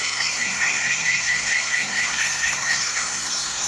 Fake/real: fake